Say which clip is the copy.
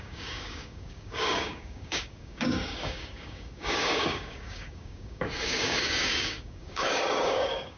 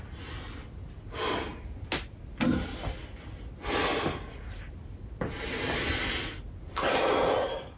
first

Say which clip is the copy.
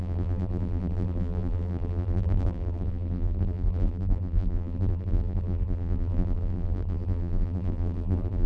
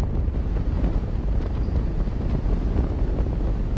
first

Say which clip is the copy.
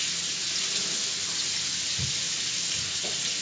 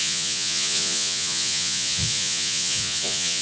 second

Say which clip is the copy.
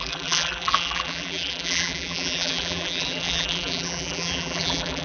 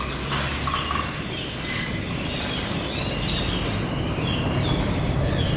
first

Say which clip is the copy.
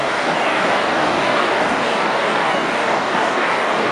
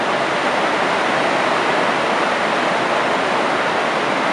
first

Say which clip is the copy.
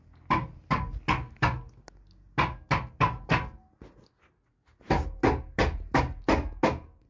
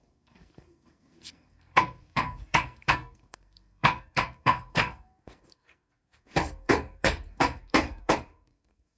second